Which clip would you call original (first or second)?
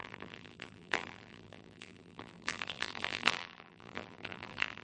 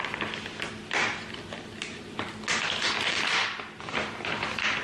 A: second